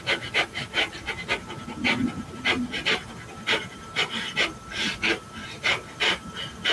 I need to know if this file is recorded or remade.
remade